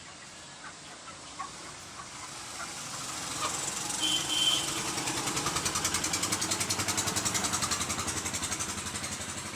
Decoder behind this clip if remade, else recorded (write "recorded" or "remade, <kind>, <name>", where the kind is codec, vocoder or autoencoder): recorded